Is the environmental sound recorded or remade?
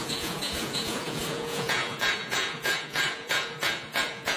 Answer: remade